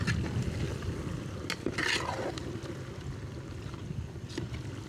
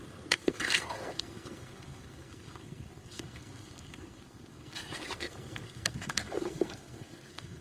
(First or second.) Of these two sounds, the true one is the first